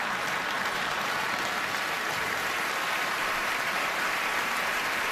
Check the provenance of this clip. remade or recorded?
remade